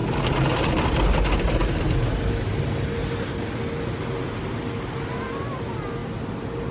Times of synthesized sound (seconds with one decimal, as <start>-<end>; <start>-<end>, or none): none